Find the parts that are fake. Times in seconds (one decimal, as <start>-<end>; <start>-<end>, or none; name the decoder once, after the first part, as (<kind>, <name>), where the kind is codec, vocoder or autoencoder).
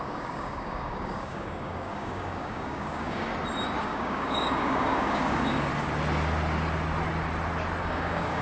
0.0-3.3 (codec, DAC); 3.8-5.7; 7.8-8.4